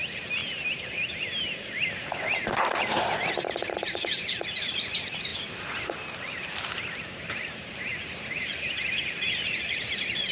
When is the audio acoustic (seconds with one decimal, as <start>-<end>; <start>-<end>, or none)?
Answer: none